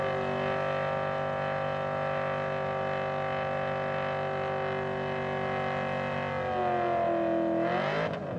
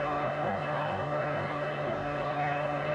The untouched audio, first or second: first